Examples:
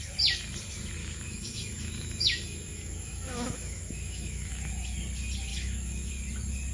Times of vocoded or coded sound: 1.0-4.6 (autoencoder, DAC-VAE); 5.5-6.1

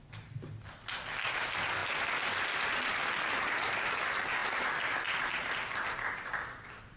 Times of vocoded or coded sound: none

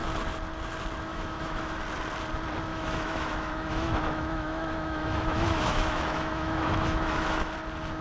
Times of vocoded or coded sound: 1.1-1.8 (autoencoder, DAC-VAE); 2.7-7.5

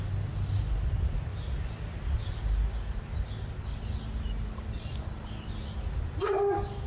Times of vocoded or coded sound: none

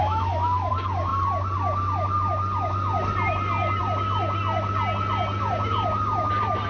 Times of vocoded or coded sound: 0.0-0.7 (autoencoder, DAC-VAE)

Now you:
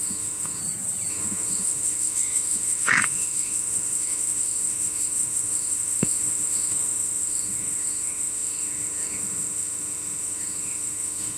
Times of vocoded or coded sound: 0.0-0.6 (autoencoder, DAC-VAE); 1.1-11.4

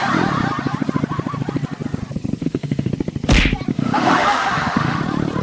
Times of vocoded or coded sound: 2.4-2.9 (autoencoder, DAC-VAE); 3.7-5.0

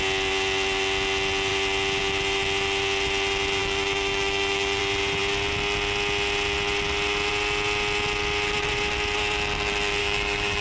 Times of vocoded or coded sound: 3.6-4.8 (autoencoder, DAC-VAE); 10.0-10.6